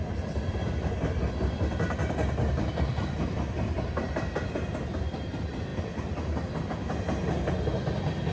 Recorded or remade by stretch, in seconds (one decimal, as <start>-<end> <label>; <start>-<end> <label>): 0.0-8.3 recorded

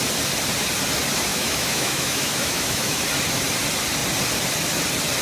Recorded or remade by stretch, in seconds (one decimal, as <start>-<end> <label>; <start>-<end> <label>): 0.0-1.3 recorded; 1.3-3.0 remade; 3.0-5.2 recorded

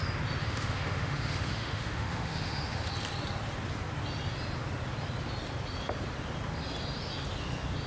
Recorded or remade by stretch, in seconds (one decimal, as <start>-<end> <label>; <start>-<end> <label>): 0.0-0.4 recorded; 0.4-2.9 remade; 2.9-7.9 recorded

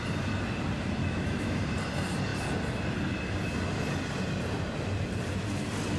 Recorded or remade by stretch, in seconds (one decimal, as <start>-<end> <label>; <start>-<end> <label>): 0.0-1.0 recorded; 1.0-1.6 remade; 1.6-6.0 recorded

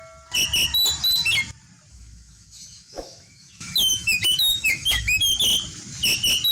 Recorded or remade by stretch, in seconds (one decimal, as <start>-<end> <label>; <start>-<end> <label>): 0.0-1.9 recorded; 1.9-5.2 remade; 5.2-6.5 recorded

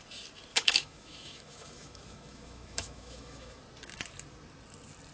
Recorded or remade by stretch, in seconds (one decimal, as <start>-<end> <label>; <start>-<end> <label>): 0.0-0.5 recorded; 0.5-3.6 remade; 3.6-5.1 recorded

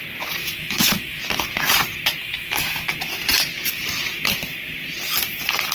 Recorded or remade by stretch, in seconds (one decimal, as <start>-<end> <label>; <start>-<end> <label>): 0.0-0.4 recorded; 0.4-1.2 remade; 1.2-2.2 recorded; 2.2-2.9 remade; 2.9-5.7 recorded

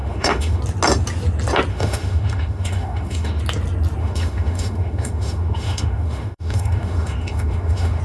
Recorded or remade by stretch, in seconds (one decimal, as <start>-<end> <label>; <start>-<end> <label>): 0.0-0.6 remade; 0.6-1.7 recorded; 1.7-3.4 remade; 3.4-4.0 recorded; 4.0-8.0 remade